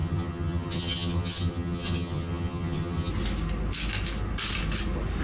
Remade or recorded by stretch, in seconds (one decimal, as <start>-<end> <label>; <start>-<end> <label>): 0.0-3.1 remade; 3.1-5.2 recorded